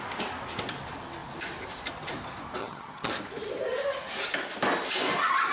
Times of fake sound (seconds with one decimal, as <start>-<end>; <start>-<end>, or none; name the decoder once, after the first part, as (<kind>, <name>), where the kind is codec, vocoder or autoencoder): 2.6-3.1 (vocoder, HiFi-GAN)